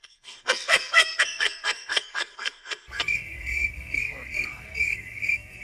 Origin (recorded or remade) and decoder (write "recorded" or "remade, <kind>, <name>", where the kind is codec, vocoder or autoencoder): remade, codec, SNAC